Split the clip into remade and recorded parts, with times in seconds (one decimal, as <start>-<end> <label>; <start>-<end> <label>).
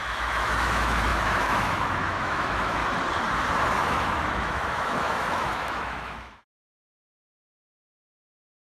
0.0-2.8 remade; 2.8-3.7 recorded; 3.7-8.8 remade